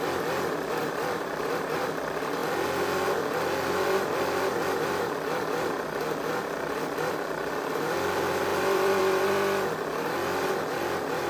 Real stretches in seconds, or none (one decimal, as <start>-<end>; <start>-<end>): 0.0-0.8; 1.7-8.5; 9.0-11.3